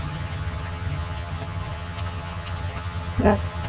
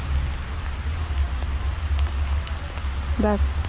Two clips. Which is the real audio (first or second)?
second